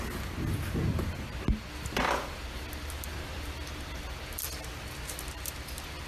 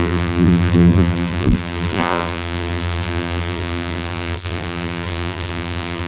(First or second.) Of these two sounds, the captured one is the first